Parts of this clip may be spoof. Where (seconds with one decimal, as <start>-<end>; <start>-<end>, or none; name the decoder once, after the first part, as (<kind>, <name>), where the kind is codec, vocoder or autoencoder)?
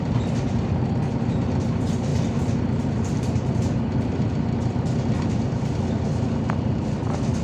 none